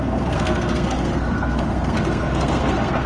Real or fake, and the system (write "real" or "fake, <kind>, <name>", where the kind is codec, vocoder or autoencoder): fake, codec, SNAC